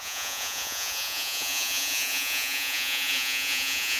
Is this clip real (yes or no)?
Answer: no